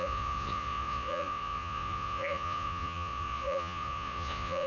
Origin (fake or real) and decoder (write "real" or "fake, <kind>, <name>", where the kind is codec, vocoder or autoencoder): fake, vocoder, Vocos